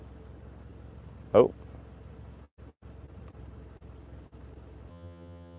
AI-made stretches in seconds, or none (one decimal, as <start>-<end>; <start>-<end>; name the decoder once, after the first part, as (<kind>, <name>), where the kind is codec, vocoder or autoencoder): 4.9-5.6 (vocoder, HiFi-GAN)